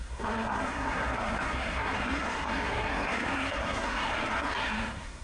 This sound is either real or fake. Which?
fake